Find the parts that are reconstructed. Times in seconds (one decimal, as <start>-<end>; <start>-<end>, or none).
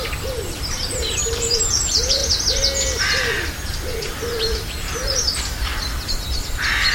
0.0-2.2; 3.0-6.9